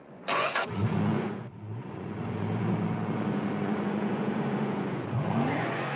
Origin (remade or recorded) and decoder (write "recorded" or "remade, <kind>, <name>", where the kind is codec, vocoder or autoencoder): remade, vocoder, Vocos